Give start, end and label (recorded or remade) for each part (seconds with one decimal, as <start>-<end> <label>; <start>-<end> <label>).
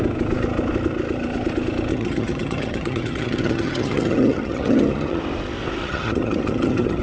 0.0-1.9 recorded; 1.9-5.2 remade; 5.2-5.8 recorded; 5.8-7.0 remade